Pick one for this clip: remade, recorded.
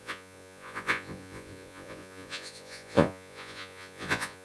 remade